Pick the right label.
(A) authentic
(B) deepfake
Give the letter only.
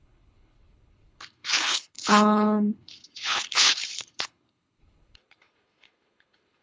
B